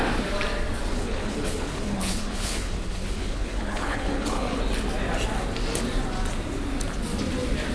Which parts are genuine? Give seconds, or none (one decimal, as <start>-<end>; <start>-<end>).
0.0-0.9; 4.6-7.7